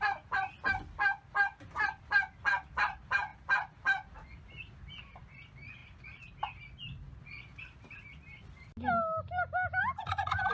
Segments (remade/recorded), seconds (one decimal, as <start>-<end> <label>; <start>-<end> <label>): 0.0-10.5 recorded